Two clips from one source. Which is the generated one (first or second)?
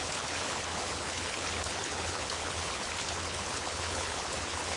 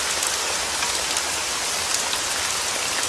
first